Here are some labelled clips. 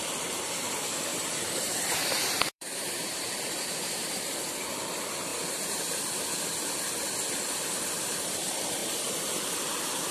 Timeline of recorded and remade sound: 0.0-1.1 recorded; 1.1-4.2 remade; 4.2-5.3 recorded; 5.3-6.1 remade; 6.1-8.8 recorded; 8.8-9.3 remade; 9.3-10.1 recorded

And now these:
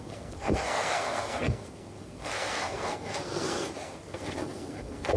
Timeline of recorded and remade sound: 0.0-5.2 remade

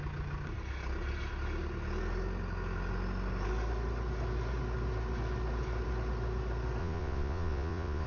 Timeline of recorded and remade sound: 0.0-6.8 recorded; 6.8-8.1 remade

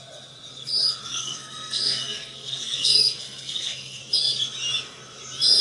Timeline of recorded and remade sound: 0.0-1.0 recorded; 1.0-4.0 remade; 4.0-5.6 recorded

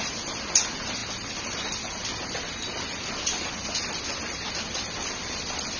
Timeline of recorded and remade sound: 0.0-5.8 recorded